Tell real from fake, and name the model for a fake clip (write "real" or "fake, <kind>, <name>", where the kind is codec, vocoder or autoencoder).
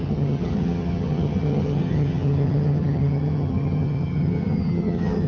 fake, vocoder, HiFi-GAN